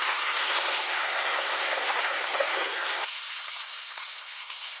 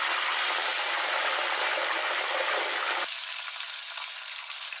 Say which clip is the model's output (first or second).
first